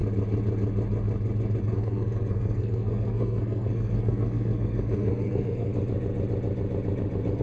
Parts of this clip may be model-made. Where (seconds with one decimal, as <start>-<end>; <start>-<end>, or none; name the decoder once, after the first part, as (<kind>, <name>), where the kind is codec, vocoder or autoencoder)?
1.6-5.7 (codec, SNAC)